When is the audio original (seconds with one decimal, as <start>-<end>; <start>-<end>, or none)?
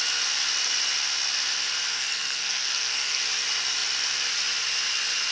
0.0-1.9; 3.2-5.3